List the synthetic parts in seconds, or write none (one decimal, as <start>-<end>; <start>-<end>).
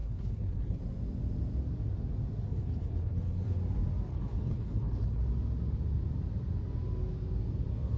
0.0-0.8; 2.5-3.6; 4.1-5.2